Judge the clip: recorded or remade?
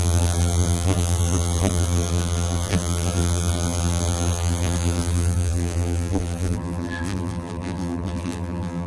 remade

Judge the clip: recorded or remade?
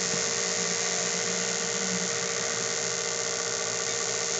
recorded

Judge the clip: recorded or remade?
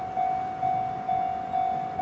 recorded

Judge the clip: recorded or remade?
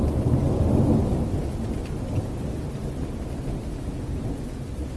remade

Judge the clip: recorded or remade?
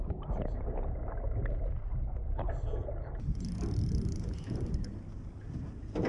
recorded